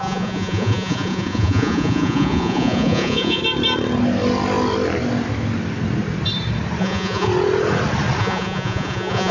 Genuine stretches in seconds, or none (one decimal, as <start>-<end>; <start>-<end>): 3.4-6.8; 7.3-8.2